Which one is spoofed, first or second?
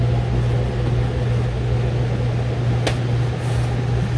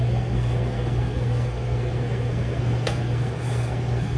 second